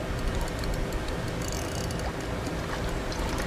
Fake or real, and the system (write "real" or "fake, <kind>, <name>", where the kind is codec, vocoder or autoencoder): real